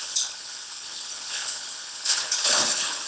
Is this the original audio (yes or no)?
no